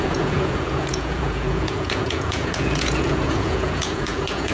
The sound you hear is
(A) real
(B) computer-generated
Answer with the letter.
B